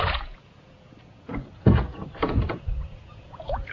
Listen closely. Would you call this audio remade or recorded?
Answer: remade